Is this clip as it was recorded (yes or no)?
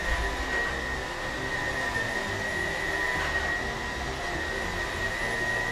yes